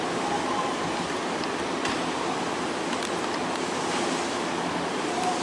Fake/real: real